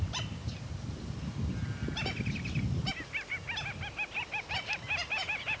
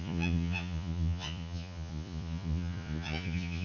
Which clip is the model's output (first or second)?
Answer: second